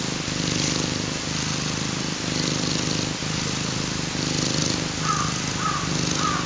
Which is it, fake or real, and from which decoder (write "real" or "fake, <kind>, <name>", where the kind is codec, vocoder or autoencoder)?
real